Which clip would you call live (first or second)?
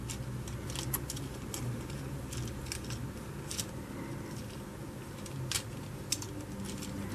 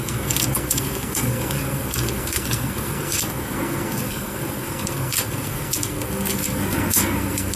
first